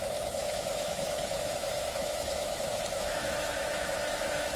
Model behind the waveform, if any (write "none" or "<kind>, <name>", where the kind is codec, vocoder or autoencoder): autoencoder, DAC-VAE